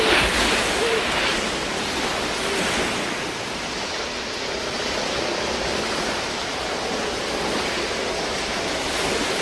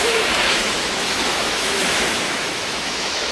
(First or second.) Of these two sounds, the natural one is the first